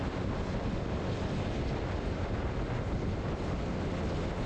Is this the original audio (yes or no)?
yes